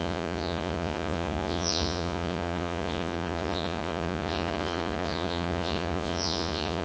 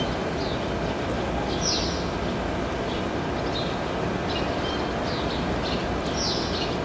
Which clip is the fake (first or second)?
first